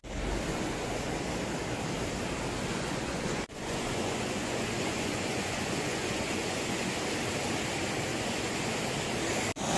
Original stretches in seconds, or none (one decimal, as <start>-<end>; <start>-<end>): 0.0-0.5; 1.1-2.7; 6.9-8.1; 8.8-9.8